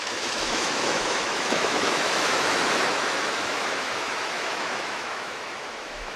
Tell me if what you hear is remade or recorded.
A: remade